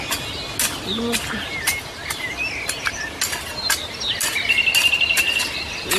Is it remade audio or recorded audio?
recorded